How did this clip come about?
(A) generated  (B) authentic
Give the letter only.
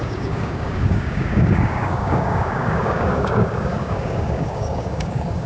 A